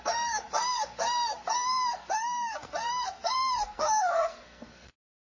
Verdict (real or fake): fake